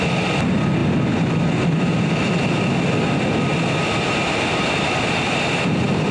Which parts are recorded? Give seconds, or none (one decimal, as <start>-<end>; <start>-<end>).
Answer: 0.0-6.1